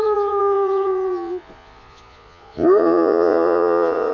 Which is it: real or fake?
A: fake